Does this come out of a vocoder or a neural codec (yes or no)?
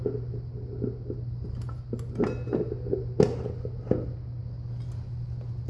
no